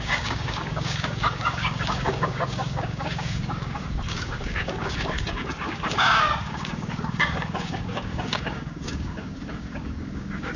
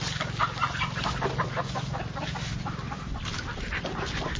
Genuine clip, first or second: second